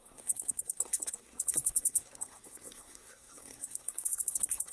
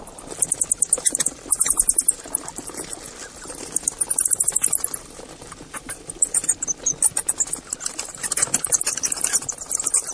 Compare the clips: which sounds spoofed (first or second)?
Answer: first